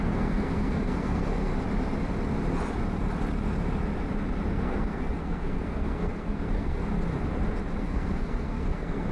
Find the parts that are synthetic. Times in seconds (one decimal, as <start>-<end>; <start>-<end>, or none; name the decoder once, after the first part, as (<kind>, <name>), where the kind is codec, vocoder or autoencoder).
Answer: 0.0-1.5 (codec, SNAC); 4.5-6.9; 7.8-9.1